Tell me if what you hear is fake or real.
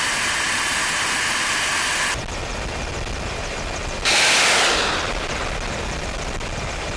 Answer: real